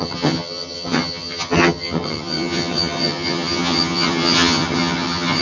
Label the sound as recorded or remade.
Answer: remade